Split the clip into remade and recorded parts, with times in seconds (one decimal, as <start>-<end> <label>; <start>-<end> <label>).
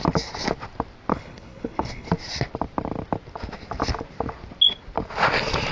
0.0-1.1 recorded; 1.1-2.1 remade; 2.1-5.7 recorded